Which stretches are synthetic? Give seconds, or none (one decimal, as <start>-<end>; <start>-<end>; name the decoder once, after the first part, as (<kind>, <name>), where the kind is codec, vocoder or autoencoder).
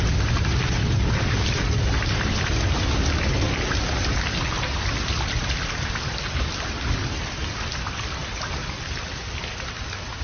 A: none